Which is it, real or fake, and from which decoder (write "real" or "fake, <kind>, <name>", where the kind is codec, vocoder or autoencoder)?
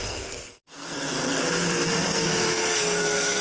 fake, codec, SNAC